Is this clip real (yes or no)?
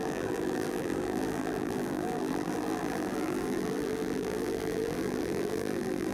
no